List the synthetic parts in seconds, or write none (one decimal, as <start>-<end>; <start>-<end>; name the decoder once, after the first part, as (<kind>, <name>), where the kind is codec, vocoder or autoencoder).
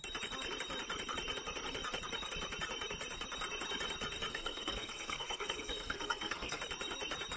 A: 4.3-6.6 (codec, SNAC)